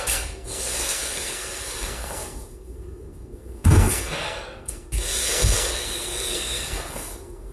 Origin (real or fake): fake